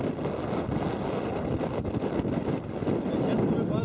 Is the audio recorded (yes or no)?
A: yes